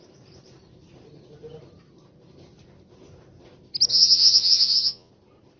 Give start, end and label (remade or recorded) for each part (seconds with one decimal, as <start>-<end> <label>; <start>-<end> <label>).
0.0-3.9 recorded; 3.9-5.1 remade; 5.1-5.6 recorded